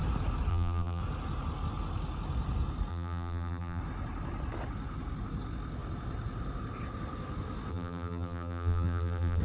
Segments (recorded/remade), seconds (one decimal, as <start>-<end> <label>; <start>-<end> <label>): 0.0-0.5 recorded; 0.5-1.0 remade; 1.0-2.9 recorded; 2.9-3.8 remade; 3.8-7.7 recorded; 7.7-9.4 remade